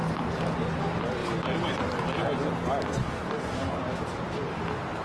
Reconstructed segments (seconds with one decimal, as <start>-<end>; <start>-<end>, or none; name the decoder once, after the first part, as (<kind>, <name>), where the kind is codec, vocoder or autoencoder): 3.0-3.7 (codec, DAC)